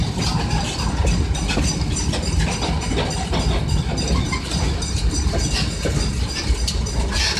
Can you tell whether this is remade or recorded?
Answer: recorded